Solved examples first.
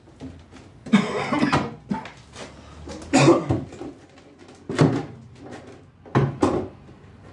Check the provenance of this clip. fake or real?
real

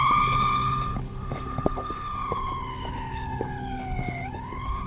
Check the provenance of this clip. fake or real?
fake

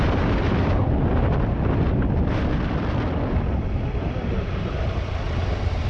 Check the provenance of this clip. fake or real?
real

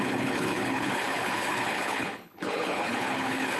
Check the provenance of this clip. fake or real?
fake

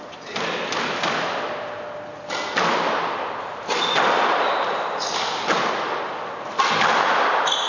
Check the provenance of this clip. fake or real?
real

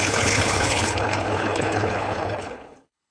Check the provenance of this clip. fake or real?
fake